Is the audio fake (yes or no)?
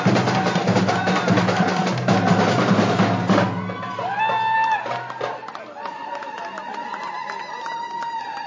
no